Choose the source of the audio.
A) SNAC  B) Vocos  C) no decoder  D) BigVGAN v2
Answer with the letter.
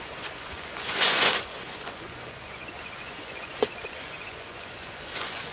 B